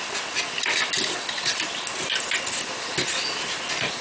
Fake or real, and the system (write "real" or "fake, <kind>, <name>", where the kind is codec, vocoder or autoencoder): real